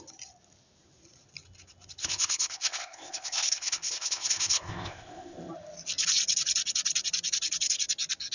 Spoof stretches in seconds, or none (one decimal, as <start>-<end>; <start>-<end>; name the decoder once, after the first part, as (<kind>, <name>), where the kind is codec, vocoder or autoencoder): 2.0-5.5 (codec, ZipCodec)